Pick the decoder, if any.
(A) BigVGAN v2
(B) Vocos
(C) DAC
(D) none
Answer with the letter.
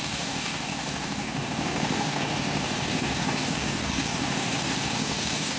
C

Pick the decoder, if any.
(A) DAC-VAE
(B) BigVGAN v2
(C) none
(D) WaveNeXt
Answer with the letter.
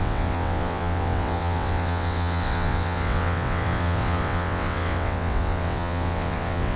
D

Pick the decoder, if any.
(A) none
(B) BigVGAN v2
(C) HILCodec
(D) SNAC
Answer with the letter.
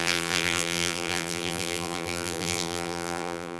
B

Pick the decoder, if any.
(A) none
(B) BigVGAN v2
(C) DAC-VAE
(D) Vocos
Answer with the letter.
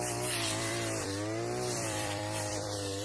B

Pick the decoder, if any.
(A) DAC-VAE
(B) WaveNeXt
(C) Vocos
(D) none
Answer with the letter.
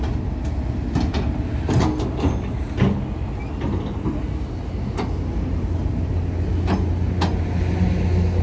D